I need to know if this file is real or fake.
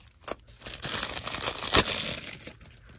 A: real